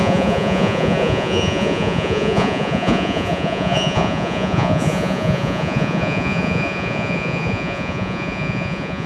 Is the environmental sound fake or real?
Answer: fake